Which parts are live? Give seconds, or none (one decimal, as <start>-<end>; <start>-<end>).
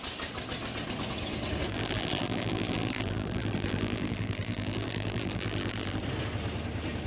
0.0-1.7; 6.0-7.1